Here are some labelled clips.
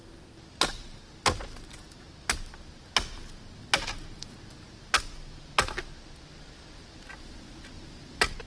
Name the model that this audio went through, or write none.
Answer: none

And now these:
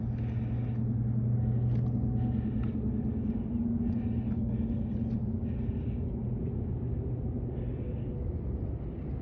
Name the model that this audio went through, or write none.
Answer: none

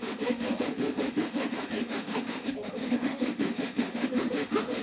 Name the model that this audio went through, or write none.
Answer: autoencoder, DAC-VAE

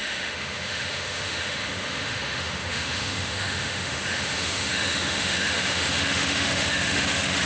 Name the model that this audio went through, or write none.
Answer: autoencoder, DAC-VAE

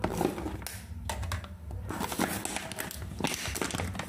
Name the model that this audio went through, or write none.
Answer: none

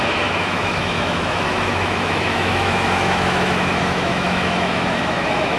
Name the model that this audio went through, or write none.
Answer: autoencoder, DAC-VAE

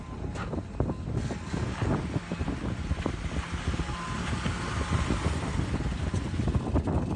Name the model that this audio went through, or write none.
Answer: none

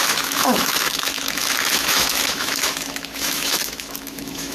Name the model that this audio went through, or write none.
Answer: autoencoder, DAC-VAE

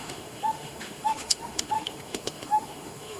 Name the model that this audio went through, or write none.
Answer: autoencoder, DAC-VAE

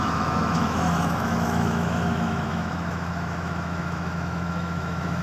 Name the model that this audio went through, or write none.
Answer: autoencoder, DAC-VAE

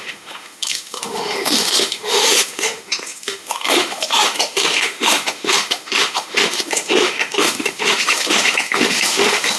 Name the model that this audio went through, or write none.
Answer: autoencoder, DAC-VAE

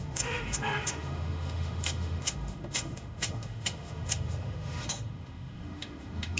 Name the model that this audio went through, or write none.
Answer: autoencoder, DAC-VAE